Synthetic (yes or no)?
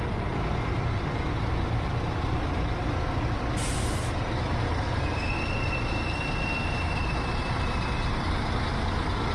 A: no